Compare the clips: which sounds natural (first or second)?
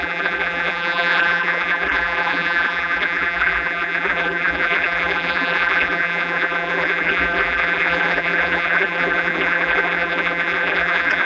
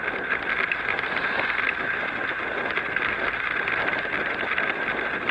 second